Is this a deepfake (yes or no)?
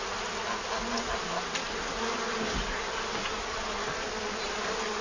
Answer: no